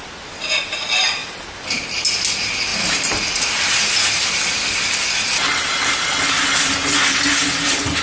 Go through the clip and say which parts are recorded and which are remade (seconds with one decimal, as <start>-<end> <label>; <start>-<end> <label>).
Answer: 0.0-1.2 recorded; 1.2-1.7 remade; 1.7-2.7 recorded; 2.7-3.4 remade; 3.4-8.0 recorded